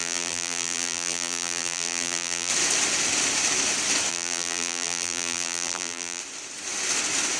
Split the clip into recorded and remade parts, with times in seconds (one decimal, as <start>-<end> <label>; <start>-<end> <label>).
0.0-2.5 remade; 2.5-4.1 recorded; 4.1-6.2 remade; 6.2-7.4 recorded